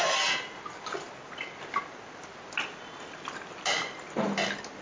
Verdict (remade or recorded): recorded